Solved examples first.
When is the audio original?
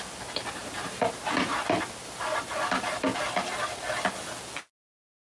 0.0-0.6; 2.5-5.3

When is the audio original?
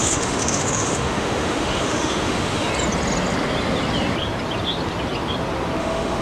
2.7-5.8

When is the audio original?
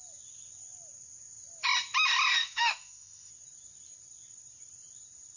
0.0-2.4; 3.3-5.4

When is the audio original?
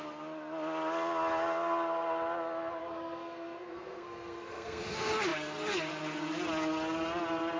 0.0-2.8; 4.8-7.6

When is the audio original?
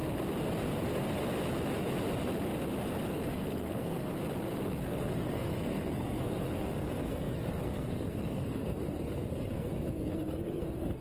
0.0-3.3; 4.1-4.7